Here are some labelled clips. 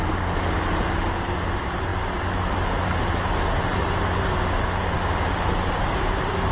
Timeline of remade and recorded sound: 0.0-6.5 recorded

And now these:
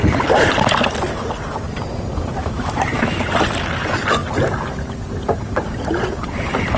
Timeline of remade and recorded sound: 0.0-2.4 recorded; 2.4-3.2 remade; 3.2-6.8 recorded

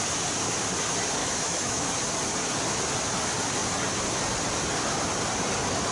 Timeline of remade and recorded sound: 0.0-1.2 recorded; 1.2-1.9 remade; 1.9-5.9 recorded

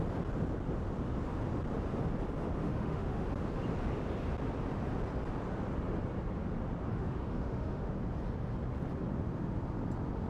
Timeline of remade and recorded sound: 0.0-2.6 recorded; 2.6-3.3 remade; 3.3-6.9 recorded; 6.9-7.9 remade; 7.9-10.3 recorded

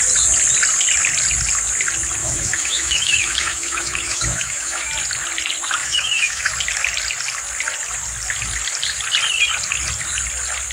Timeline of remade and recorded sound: 0.0-2.2 recorded; 2.2-4.9 remade; 4.9-5.8 recorded; 5.8-6.5 remade; 6.5-10.7 recorded

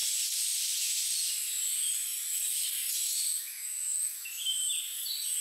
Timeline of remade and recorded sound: 0.0-3.3 recorded; 3.3-4.3 remade; 4.3-5.4 recorded

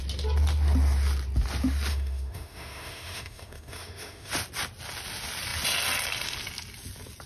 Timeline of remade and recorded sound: 0.0-1.9 recorded; 1.9-4.3 remade; 4.3-7.3 recorded